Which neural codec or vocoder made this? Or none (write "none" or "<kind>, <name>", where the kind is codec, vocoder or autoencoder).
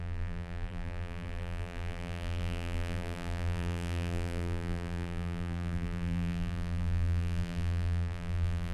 vocoder, BigVGAN v2